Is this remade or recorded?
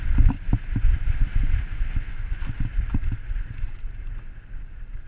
recorded